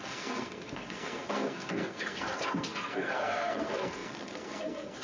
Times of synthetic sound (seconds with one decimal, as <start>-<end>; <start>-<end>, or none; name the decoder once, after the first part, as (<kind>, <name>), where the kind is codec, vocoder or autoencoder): 0.0-5.0 (codec, SNAC)